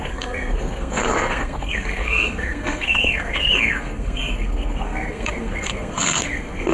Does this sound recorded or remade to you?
remade